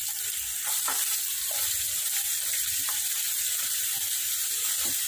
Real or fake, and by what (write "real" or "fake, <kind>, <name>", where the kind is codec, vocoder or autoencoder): real